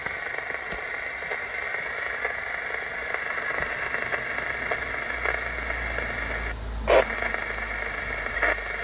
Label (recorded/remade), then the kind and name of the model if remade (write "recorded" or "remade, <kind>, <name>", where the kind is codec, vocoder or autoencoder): recorded